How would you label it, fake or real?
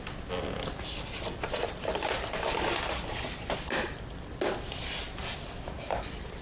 real